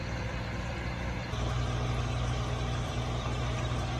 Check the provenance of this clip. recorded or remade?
remade